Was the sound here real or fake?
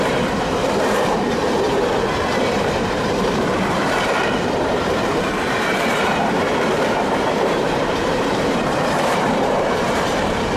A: fake